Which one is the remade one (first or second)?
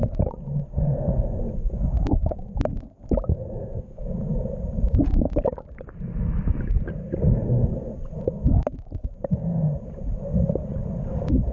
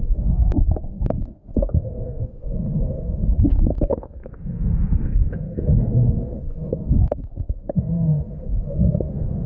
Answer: second